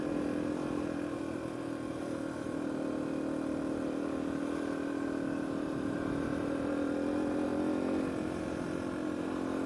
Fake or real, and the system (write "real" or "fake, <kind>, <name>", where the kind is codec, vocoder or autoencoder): fake, vocoder, BigVGAN v2